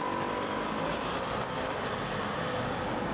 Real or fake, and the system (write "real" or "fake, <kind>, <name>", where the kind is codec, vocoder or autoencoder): real